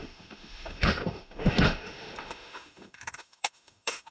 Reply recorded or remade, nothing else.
remade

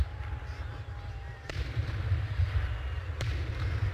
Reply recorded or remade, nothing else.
remade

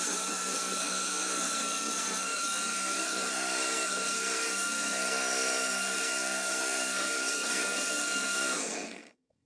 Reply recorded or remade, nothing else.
remade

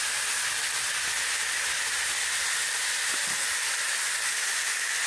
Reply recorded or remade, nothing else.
recorded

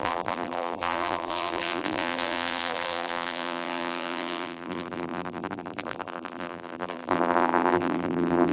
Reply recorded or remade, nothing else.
remade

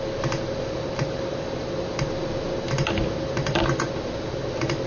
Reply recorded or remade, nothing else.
recorded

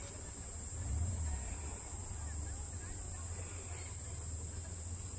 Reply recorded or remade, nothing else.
recorded